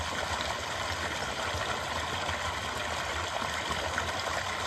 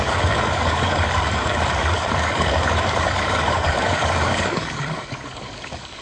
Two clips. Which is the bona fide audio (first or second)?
first